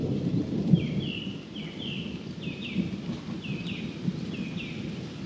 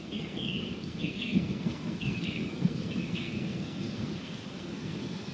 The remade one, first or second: second